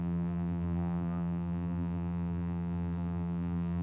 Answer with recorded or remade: remade